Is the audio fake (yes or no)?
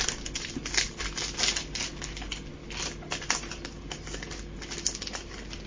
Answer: no